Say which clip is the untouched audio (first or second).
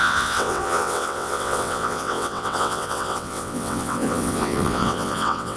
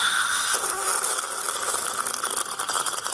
second